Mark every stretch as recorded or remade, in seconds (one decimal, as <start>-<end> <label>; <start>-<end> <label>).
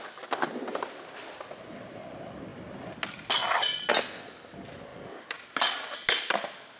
0.0-0.7 recorded; 0.7-1.4 remade; 1.4-6.8 recorded